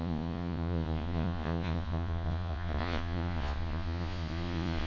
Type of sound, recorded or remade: remade